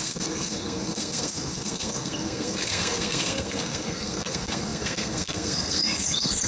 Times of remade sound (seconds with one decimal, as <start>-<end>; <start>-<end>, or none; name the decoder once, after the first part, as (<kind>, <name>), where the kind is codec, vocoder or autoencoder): 0.0-6.5 (codec, SNAC)